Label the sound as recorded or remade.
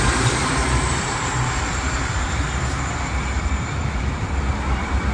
remade